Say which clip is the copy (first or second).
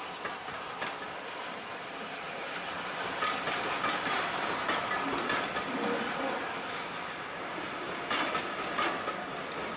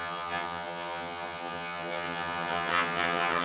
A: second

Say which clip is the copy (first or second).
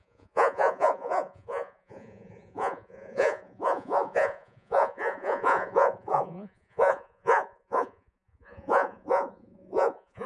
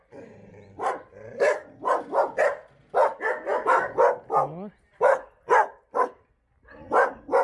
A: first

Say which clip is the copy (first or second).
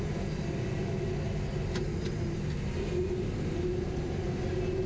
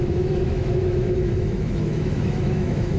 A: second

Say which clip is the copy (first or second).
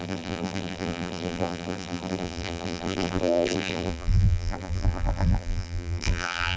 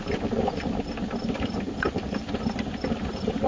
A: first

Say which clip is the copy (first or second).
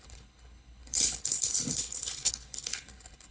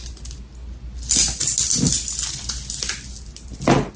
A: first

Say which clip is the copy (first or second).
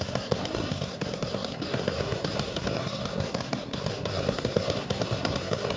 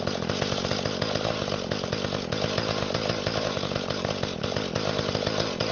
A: first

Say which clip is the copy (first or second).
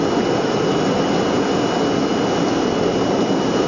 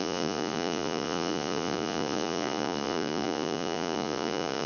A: second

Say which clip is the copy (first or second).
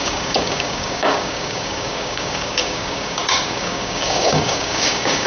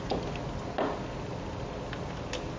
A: first